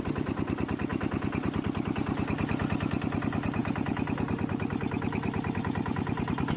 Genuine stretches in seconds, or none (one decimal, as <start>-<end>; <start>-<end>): 0.0-6.6